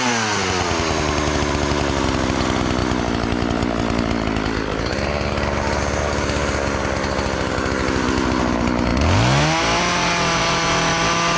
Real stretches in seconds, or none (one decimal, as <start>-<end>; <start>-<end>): 0.0-11.4